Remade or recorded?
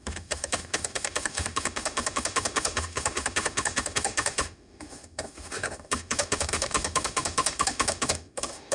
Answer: remade